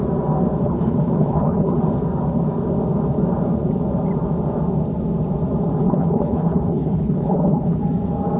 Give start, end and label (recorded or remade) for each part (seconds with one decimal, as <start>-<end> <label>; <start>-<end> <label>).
0.0-0.6 recorded; 0.6-1.8 remade; 1.8-5.8 recorded; 5.8-7.8 remade; 7.8-8.4 recorded